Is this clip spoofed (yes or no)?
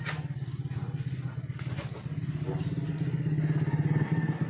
no